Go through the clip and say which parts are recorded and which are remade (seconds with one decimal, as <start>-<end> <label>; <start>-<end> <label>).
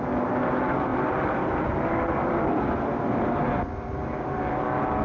0.0-5.0 recorded